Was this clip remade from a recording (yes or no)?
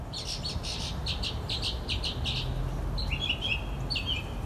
no